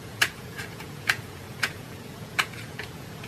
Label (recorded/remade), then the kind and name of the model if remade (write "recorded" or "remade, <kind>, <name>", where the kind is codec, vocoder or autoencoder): remade, vocoder, Vocos